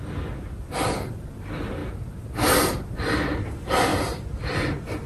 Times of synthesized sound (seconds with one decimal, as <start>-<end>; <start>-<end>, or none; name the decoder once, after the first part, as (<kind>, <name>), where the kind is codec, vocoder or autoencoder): none